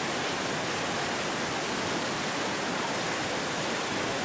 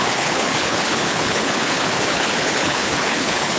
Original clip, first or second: first